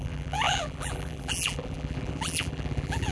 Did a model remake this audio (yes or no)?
yes